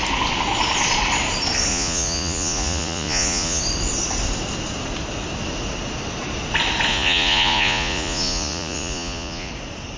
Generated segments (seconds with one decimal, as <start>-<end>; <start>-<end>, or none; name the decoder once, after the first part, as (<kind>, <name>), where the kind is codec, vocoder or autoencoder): 1.7-3.6 (vocoder, Vocos); 6.9-9.5